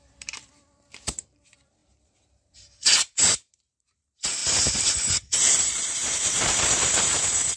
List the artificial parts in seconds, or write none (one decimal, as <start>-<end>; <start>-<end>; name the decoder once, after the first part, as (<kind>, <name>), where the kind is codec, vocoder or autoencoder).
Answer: 0.0-7.6 (vocoder, BigVGAN v2)